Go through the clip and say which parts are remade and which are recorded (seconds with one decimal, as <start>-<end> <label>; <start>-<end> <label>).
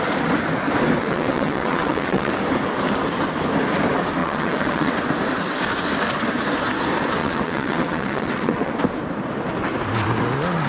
0.0-1.0 recorded; 1.0-2.3 remade; 2.3-4.2 recorded; 4.2-4.9 remade; 4.9-7.2 recorded; 7.2-8.7 remade; 8.7-10.7 recorded